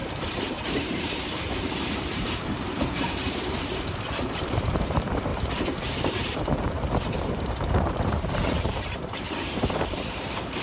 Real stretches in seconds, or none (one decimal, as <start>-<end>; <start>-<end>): none